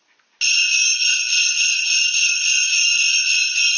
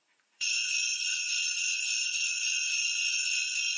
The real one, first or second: first